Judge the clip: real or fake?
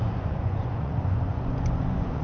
fake